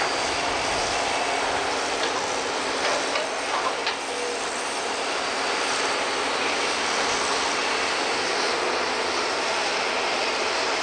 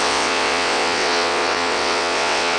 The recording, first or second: first